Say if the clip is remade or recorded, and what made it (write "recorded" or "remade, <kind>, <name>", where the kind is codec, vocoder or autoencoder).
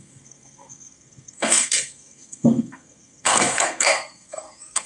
remade, codec, SNAC